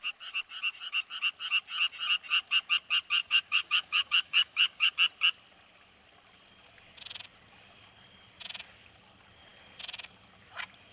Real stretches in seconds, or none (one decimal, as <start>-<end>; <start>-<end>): 0.0-3.2; 4.9-10.9